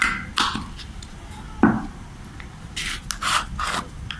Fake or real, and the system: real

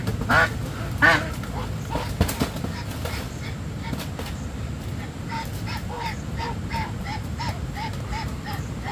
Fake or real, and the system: real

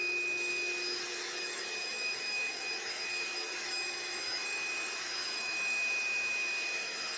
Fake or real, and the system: fake, autoencoder, DAC-VAE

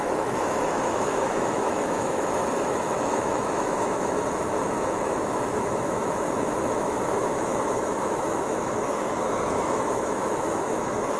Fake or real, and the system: fake, autoencoder, DAC-VAE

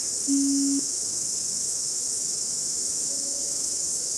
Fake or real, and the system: fake, autoencoder, DAC-VAE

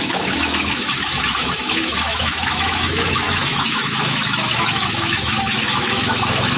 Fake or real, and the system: fake, autoencoder, DAC-VAE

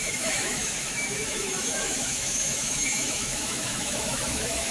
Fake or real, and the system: fake, autoencoder, DAC-VAE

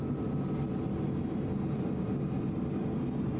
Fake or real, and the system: real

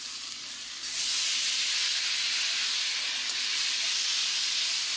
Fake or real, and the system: real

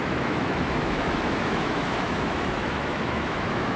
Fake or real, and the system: fake, autoencoder, DAC-VAE